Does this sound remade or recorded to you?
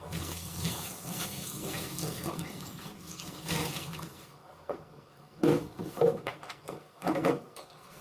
remade